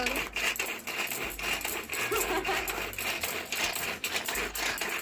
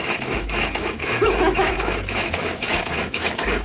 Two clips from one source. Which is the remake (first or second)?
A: second